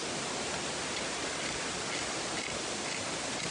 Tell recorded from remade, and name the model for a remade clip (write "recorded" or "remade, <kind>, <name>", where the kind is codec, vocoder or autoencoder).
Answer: recorded